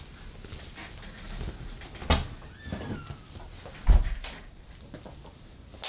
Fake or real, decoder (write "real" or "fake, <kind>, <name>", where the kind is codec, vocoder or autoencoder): real